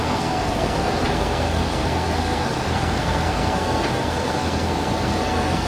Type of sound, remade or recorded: remade